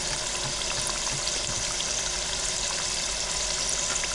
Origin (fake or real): real